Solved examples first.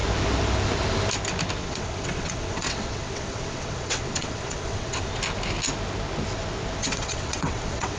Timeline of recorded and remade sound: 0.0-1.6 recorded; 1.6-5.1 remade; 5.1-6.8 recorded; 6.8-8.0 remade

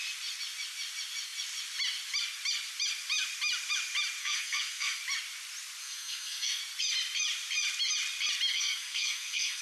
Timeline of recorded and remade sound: 0.0-4.2 recorded; 4.2-5.0 remade; 5.0-5.8 recorded; 5.8-6.6 remade; 6.6-8.5 recorded; 8.5-9.6 remade

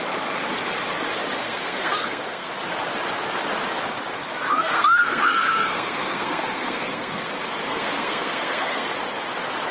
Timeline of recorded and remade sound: 0.0-1.4 recorded; 1.4-2.5 remade; 2.5-4.5 recorded; 4.5-7.3 remade; 7.3-7.7 recorded; 7.7-8.9 remade; 8.9-9.7 recorded

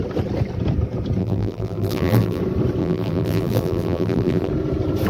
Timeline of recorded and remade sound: 0.0-1.2 recorded; 1.2-2.4 remade; 2.4-2.8 recorded; 2.8-4.5 remade; 4.5-5.1 recorded

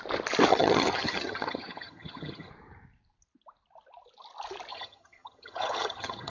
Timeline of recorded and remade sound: 0.0-0.5 recorded; 0.5-2.5 remade; 2.5-4.7 recorded; 4.7-6.3 remade

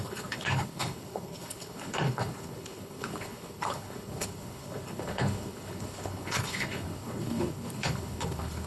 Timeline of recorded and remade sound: 0.0-8.7 remade